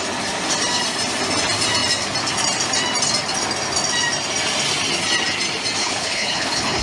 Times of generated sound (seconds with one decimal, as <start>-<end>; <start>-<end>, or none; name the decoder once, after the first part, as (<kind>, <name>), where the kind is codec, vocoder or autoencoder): 5.8-6.8 (codec, HILCodec)